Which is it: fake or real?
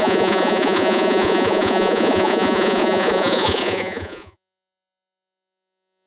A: fake